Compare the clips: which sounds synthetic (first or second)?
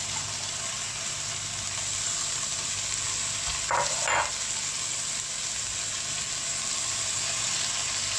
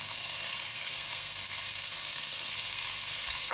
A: second